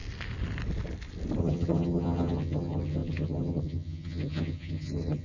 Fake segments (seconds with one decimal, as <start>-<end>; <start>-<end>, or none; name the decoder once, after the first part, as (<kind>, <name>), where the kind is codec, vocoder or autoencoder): 1.4-5.2 (vocoder, HiFi-GAN)